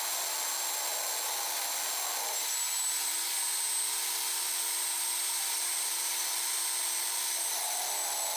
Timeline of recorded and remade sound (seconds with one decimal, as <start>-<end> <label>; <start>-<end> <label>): 0.0-8.4 recorded